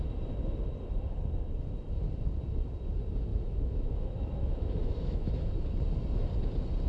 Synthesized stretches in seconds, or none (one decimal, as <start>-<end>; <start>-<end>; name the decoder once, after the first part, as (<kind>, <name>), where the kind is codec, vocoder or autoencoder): 3.3-5.5 (autoencoder, DAC-VAE)